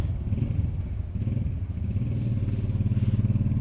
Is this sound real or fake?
real